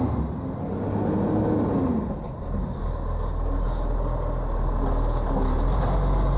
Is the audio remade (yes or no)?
no